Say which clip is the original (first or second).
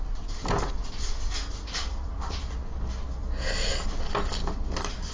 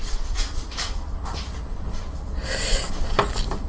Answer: first